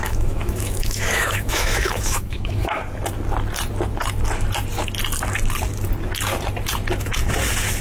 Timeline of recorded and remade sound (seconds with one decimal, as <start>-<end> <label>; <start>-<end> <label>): 0.0-2.8 remade; 2.8-7.8 recorded